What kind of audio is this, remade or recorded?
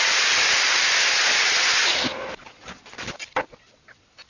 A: remade